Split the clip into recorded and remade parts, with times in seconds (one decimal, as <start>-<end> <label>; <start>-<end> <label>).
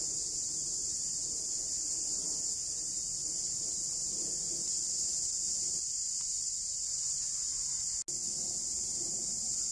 0.0-9.7 recorded